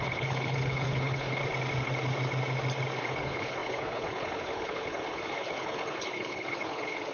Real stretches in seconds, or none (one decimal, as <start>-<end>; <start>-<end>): 1.4-3.0